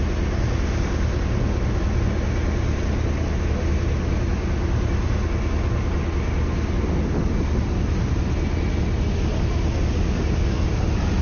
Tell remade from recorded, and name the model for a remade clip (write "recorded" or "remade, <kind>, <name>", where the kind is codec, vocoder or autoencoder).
recorded